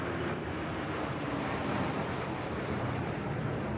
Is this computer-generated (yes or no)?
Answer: yes